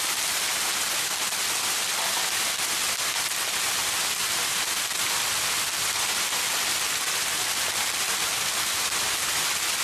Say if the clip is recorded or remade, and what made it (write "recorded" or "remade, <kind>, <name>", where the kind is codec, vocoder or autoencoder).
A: recorded